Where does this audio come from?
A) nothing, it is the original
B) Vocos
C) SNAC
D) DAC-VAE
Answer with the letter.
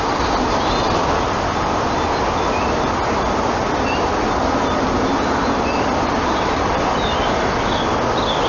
A